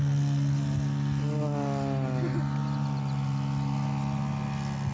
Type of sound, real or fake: real